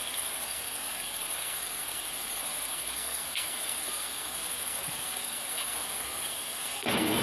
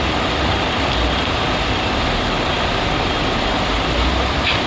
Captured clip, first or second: second